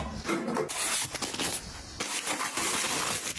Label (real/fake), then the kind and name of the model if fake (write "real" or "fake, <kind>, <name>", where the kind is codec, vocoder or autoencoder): real